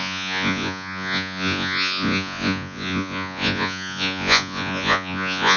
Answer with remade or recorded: remade